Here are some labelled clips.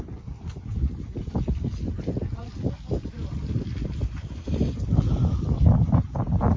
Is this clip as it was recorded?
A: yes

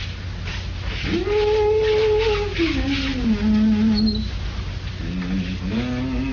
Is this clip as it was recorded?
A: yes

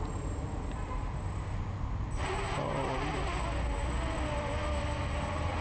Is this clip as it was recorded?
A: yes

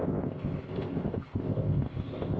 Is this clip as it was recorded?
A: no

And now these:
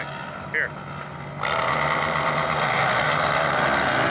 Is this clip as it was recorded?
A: yes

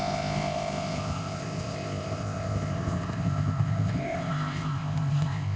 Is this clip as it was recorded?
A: no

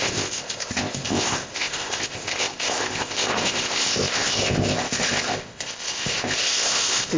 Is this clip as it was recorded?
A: no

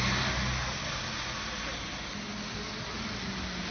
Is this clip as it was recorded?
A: yes